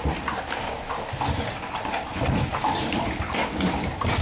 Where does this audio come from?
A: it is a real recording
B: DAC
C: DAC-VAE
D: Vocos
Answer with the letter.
A